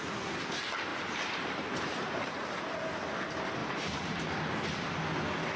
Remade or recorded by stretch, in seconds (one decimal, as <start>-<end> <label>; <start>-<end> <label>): 0.0-0.9 recorded; 0.9-2.5 remade; 2.5-3.6 recorded; 3.6-4.3 remade; 4.3-5.6 recorded